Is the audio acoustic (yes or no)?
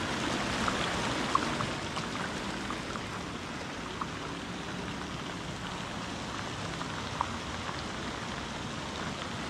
yes